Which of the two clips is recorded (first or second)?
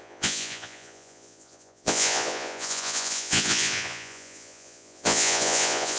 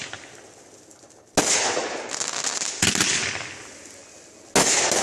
second